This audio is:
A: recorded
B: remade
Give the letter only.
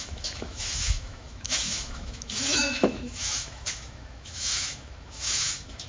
B